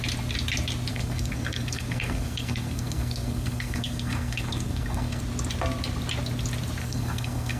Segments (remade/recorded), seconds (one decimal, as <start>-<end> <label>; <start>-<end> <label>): 0.0-0.9 recorded; 0.9-5.2 remade; 5.2-6.8 recorded; 6.8-7.6 remade